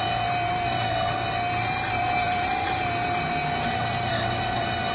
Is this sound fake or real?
fake